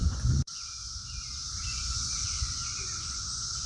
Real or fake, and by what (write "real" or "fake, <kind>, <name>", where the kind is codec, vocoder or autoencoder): fake, vocoder, Vocos